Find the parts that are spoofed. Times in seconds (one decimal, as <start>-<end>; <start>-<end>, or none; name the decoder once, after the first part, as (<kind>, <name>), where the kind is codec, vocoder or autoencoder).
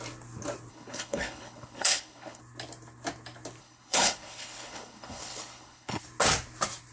0.7-2.4 (codec, HILCodec); 3.6-6.0